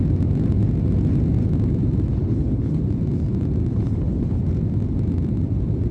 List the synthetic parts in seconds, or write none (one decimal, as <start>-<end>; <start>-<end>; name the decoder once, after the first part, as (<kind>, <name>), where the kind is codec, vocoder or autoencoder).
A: 2.1-2.8 (codec, HILCodec); 3.7-4.4